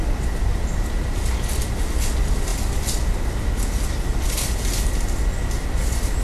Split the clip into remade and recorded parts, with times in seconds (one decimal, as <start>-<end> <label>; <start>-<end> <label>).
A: 0.0-6.2 recorded